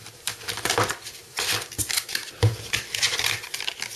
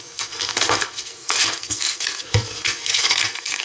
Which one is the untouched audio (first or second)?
first